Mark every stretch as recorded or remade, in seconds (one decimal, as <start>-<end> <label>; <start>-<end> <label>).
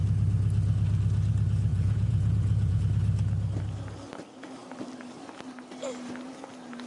0.0-1.7 recorded; 1.7-2.8 remade; 2.8-6.9 recorded